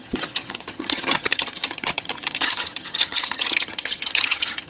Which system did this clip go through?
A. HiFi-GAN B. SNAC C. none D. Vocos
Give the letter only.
A